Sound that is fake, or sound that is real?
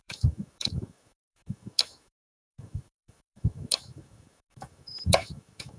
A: fake